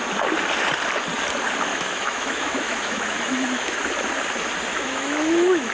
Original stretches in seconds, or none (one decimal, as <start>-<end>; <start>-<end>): 0.0-1.7; 3.8-4.7